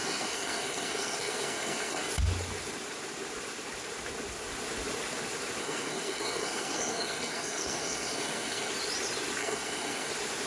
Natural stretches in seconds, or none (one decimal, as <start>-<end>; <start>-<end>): 2.1-5.6; 8.7-9.4; 10.1-10.5